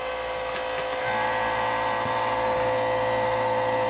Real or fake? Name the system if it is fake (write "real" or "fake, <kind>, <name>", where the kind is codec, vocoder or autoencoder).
real